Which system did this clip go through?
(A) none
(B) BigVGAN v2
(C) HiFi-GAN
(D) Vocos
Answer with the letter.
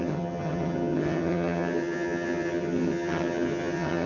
C